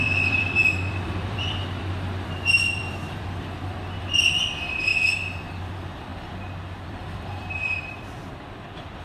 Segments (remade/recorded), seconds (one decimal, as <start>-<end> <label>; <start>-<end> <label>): 0.0-4.9 remade; 4.9-5.6 recorded; 5.6-6.1 remade; 6.1-6.8 recorded; 6.8-9.0 remade